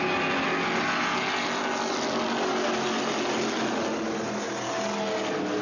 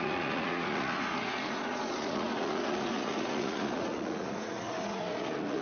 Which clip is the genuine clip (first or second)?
first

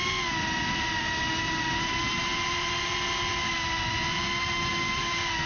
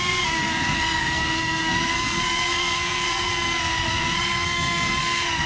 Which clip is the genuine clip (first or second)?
first